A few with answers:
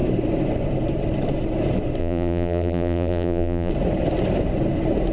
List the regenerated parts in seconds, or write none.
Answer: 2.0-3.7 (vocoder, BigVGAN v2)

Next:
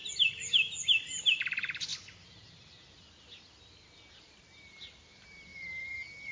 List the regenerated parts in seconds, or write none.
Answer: 1.2-1.9 (vocoder, BigVGAN v2); 4.2-5.5

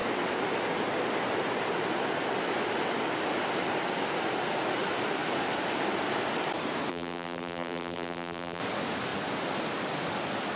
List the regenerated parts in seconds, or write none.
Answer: 6.9-8.6 (vocoder, BigVGAN v2)

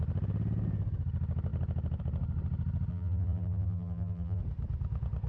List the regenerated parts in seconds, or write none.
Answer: 2.9-4.4 (vocoder, BigVGAN v2)

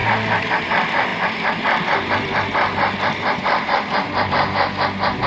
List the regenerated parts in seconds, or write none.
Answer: 0.0-0.5 (vocoder, BigVGAN v2); 1.1-4.3

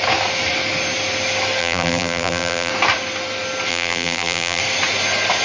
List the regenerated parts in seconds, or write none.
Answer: 1.6-2.7 (vocoder, BigVGAN v2); 3.7-4.6

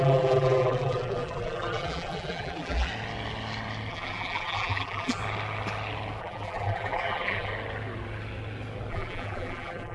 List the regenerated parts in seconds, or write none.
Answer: 0.0-2.9 (vocoder, BigVGAN v2); 3.9-5.2; 6.2-7.5; 8.9-9.9